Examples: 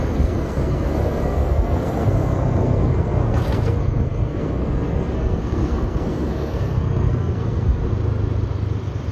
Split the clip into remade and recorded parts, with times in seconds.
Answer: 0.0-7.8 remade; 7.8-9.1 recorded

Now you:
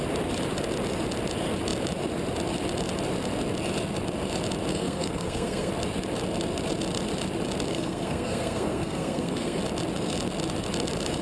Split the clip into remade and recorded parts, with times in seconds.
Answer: 0.0-4.7 recorded; 4.7-5.7 remade; 5.7-7.7 recorded; 7.7-9.6 remade; 9.6-11.2 recorded